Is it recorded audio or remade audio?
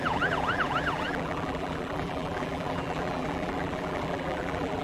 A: remade